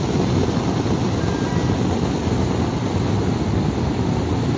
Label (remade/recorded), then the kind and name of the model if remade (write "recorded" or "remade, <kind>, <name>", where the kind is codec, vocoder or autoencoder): recorded